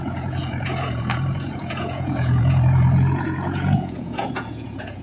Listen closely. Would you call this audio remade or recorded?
remade